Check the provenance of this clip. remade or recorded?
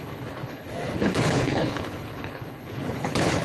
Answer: remade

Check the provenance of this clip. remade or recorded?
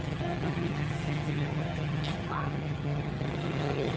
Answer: remade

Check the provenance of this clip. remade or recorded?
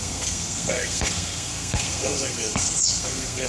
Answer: remade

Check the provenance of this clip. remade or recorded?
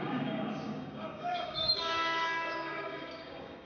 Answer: remade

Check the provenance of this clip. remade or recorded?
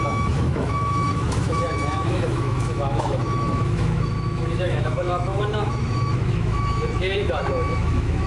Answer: remade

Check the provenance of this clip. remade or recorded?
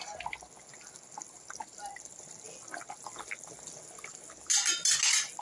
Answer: recorded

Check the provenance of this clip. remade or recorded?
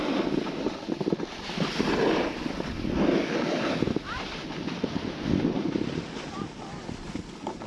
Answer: recorded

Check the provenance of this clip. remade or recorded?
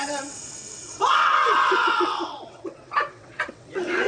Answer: remade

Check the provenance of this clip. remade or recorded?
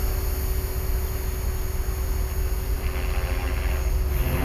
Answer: recorded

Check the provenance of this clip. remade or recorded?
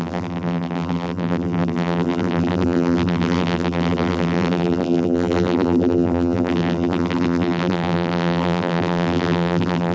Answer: remade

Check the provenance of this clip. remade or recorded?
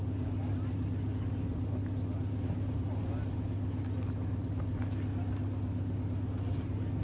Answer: recorded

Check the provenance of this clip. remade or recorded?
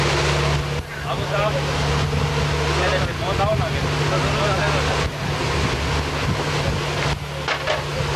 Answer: recorded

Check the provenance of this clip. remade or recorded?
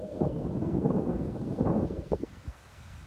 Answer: remade